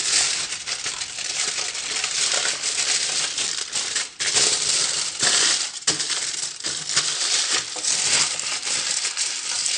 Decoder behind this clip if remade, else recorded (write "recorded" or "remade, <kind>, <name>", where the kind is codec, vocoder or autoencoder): recorded